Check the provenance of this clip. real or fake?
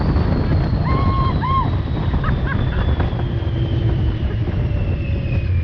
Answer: fake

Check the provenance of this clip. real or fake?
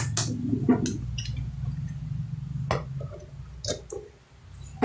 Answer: real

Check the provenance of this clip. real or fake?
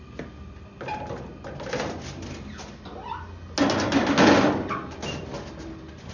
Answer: real